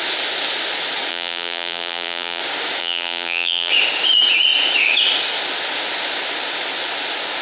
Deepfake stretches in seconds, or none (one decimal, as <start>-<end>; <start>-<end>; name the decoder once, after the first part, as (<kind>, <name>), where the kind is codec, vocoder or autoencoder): 1.1-2.4 (vocoder, BigVGAN v2); 2.8-3.7